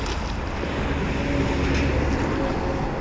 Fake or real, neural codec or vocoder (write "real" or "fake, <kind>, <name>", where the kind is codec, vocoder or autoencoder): real